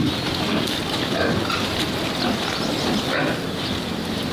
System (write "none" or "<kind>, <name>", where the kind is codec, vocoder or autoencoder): none